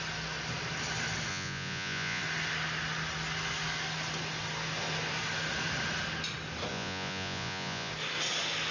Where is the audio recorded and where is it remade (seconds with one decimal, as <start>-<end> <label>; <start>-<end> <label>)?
0.0-1.3 recorded; 1.3-2.2 remade; 2.2-6.7 recorded; 6.7-7.9 remade; 7.9-8.7 recorded

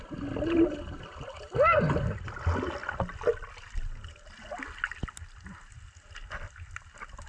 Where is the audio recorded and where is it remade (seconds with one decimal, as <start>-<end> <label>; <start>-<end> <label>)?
0.0-7.3 recorded

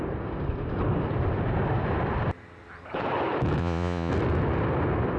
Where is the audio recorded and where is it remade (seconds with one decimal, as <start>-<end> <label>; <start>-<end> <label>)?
0.0-3.6 recorded; 3.6-4.1 remade; 4.1-5.2 recorded

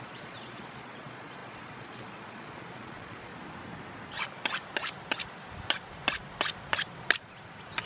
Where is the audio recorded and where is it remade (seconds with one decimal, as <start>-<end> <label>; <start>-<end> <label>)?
0.0-3.3 remade; 3.3-7.9 recorded

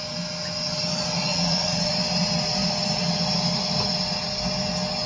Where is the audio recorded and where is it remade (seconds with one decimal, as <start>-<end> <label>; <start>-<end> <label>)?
0.0-1.3 recorded; 1.3-1.9 remade; 1.9-5.1 recorded

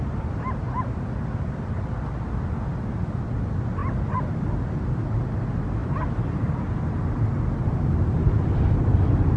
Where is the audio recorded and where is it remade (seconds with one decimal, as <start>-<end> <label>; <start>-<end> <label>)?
0.0-9.4 recorded

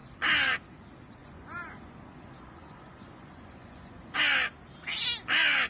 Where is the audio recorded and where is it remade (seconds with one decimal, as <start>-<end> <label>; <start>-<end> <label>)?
0.0-1.2 recorded; 1.2-4.2 remade; 4.2-5.7 recorded